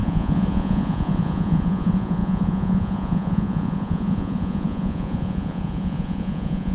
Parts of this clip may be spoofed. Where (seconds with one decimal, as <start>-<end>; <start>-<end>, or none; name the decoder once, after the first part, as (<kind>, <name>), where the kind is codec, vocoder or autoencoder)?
0.0-6.7 (vocoder, Vocos)